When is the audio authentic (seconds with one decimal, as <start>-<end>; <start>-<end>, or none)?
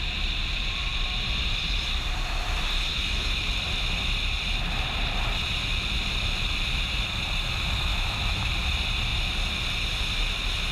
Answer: 0.0-2.9; 3.4-7.9; 8.5-10.7